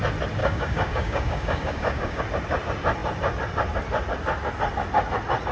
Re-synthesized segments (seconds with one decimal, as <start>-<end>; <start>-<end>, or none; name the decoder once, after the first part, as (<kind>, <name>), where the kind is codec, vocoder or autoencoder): 0.4-2.2 (codec, DAC)